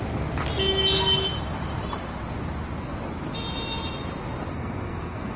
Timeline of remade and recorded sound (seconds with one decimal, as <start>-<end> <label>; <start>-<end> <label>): 0.0-4.5 recorded; 4.5-5.4 remade